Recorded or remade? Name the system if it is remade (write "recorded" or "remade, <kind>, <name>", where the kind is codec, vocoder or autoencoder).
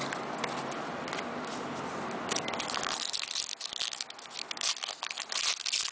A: recorded